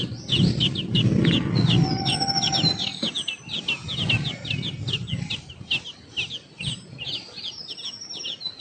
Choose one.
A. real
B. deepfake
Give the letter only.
A